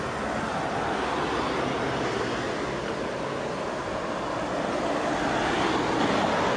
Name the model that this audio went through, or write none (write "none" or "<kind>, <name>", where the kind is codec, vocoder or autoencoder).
none